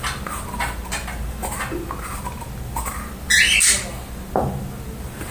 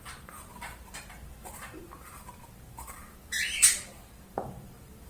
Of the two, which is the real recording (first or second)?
first